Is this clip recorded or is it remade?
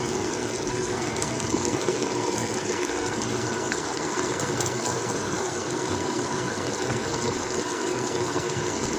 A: remade